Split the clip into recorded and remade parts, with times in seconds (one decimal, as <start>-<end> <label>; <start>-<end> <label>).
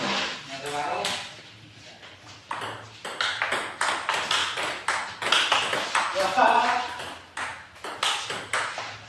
0.0-3.0 remade; 3.0-3.8 recorded; 3.8-4.4 remade; 4.4-5.3 recorded; 5.3-7.5 remade; 7.5-8.5 recorded; 8.5-9.1 remade